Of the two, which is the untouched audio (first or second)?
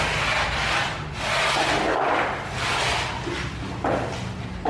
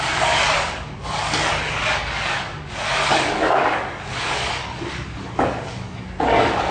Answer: first